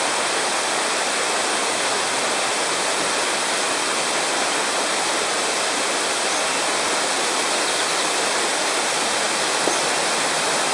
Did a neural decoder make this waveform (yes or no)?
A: no